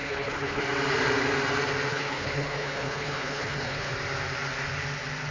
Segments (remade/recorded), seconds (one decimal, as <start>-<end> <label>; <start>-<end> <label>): 0.0-0.6 remade; 0.6-1.9 recorded; 1.9-3.9 remade; 3.9-5.3 recorded